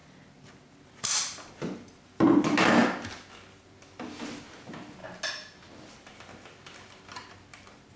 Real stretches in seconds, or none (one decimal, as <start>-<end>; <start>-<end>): 0.0-8.0

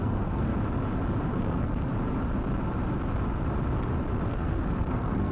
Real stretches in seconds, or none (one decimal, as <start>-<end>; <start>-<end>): 0.5-1.3; 1.9-4.3

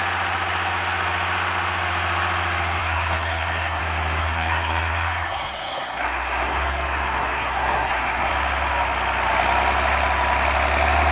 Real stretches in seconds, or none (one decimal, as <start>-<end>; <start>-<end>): 0.0-2.8; 3.8-4.2; 8.3-11.1

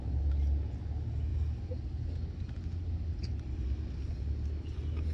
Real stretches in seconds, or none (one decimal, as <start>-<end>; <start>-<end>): 0.0-5.1

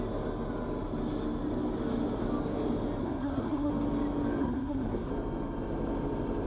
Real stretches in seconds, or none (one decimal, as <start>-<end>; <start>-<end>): 0.0-3.0; 3.7-4.4; 5.1-6.5